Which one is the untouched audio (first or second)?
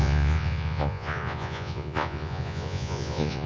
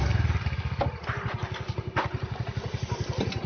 second